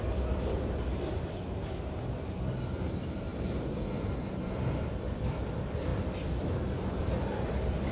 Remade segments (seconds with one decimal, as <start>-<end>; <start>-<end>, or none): 0.0-7.9